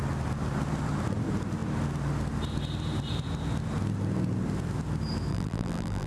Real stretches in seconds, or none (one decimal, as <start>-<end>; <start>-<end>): 0.0-5.3